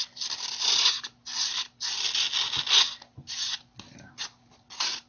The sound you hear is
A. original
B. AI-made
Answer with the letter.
A